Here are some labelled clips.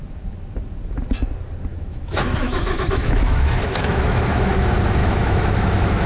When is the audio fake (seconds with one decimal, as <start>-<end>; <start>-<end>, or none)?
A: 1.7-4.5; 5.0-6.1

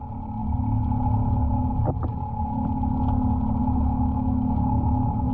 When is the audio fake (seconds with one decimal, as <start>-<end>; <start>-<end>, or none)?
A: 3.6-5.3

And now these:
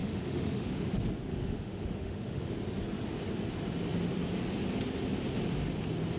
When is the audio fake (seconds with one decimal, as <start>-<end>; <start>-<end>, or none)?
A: 0.0-0.9; 1.3-2.5